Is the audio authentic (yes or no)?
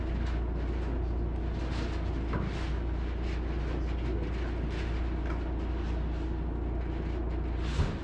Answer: yes